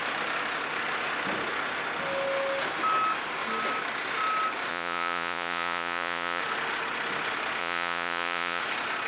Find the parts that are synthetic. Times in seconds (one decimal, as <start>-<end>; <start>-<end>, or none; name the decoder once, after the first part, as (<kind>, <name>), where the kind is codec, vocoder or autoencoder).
4.7-6.4 (vocoder, Vocos); 7.6-8.6